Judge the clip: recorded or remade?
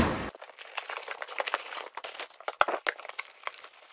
recorded